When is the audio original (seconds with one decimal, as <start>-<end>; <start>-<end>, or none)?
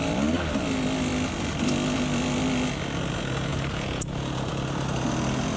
0.0-3.5; 4.5-5.6